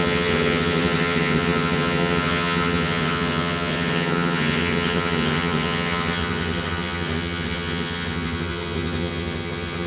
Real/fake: fake